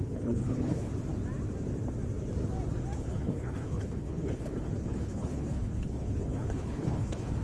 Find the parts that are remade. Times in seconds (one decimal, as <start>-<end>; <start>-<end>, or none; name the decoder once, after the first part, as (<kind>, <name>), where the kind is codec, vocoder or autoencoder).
0.0-0.9 (codec, HILCodec); 3.0-7.4